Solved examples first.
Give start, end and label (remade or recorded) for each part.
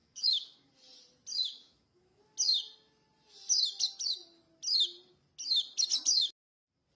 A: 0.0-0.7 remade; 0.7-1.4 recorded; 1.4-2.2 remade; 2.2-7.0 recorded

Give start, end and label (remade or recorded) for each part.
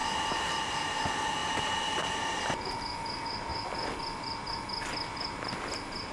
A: 0.0-0.5 remade; 0.5-1.4 recorded; 1.4-2.0 remade; 2.0-6.1 recorded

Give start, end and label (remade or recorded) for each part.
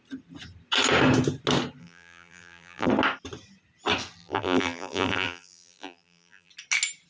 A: 0.0-1.8 recorded; 1.8-2.9 remade; 2.9-4.2 recorded; 4.2-6.5 remade; 6.5-7.1 recorded